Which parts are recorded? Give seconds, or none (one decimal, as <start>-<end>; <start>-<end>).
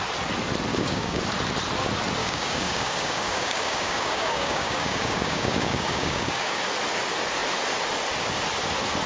0.0-0.7; 1.2-2.2; 6.6-9.1